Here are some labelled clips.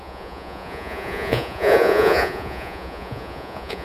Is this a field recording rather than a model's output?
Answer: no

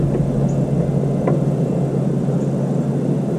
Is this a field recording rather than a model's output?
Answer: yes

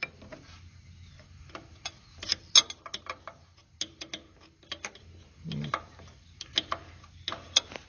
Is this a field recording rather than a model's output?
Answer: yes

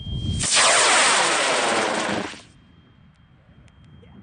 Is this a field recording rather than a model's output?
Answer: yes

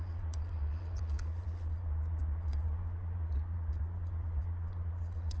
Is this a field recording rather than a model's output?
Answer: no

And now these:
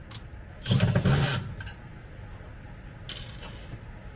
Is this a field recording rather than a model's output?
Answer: yes